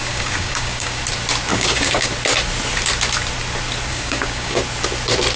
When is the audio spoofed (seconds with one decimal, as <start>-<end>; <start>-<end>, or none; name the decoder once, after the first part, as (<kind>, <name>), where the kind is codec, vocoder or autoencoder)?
0.0-1.0 (codec, DAC); 1.5-2.1; 3.9-4.6